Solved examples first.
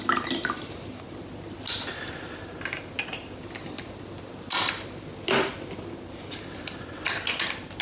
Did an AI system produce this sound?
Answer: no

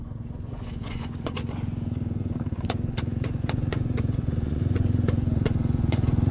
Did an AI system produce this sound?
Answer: yes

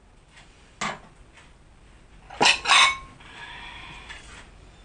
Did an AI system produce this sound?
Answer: no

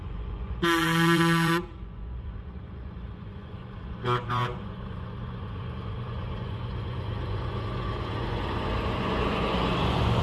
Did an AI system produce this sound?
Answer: yes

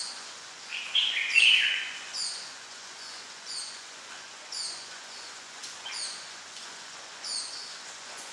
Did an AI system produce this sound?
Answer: yes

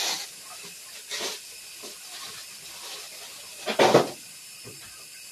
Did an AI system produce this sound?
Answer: no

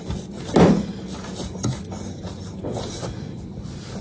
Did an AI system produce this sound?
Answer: no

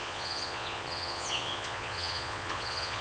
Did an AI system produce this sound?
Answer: yes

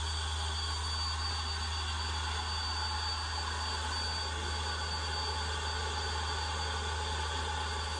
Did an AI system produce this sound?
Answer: no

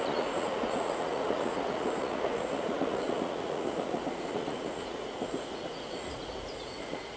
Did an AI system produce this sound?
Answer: yes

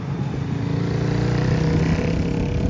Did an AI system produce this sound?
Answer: no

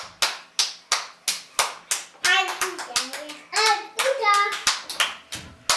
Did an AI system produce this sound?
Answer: no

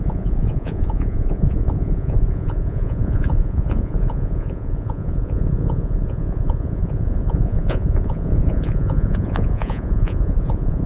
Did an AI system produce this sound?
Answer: yes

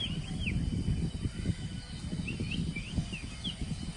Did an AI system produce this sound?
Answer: no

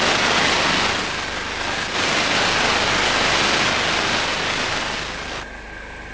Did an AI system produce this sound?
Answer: no